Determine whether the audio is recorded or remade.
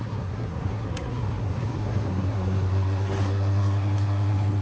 remade